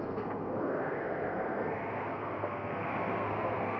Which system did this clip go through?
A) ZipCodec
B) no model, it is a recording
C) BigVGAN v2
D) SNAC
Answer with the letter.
D